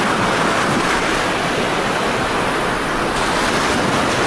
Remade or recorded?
recorded